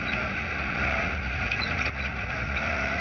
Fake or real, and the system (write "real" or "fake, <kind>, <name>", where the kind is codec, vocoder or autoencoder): fake, vocoder, Vocos